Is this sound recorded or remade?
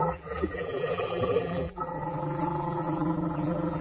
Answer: remade